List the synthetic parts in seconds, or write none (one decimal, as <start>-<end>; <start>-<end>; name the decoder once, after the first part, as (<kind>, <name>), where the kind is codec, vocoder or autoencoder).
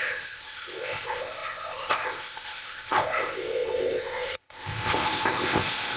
0.0-6.0 (codec, ZipCodec)